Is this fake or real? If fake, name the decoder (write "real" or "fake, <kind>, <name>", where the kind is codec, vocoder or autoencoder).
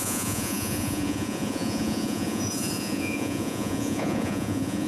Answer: fake, vocoder, Vocos